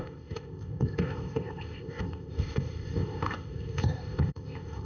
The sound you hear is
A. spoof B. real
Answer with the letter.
A